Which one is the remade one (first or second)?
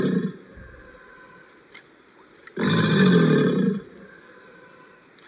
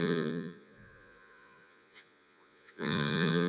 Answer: second